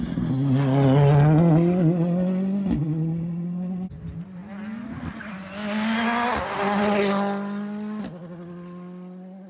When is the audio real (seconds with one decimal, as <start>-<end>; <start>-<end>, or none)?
0.0-9.5